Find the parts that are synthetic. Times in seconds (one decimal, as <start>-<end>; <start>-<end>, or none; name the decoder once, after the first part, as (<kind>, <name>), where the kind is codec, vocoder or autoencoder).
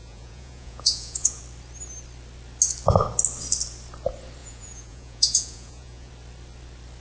0.0-1.4 (vocoder, Vocos); 4.4-6.1